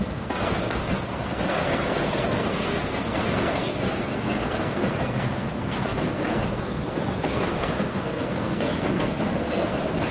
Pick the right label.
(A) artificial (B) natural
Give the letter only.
A